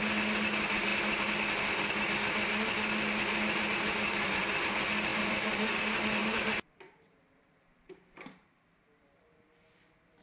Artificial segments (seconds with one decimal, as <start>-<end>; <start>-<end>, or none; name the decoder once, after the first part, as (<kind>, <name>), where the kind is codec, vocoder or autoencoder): 5.1-5.7 (vocoder, BigVGAN v2); 6.2-8.4